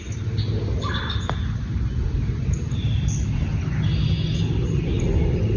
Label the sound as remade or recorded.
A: recorded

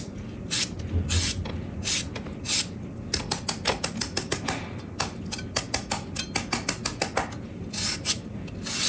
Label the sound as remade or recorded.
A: recorded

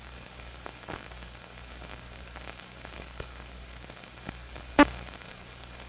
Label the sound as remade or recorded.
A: remade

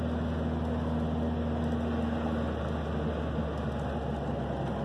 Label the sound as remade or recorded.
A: recorded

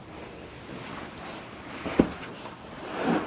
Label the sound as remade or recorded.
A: recorded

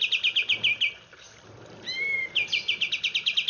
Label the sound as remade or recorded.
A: recorded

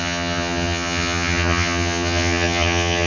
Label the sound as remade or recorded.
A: remade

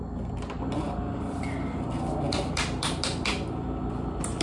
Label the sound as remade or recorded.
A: recorded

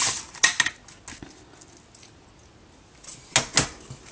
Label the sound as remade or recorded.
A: recorded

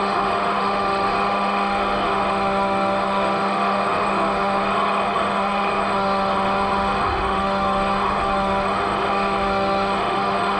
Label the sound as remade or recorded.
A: remade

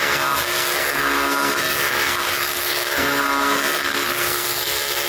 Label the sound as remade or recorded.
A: remade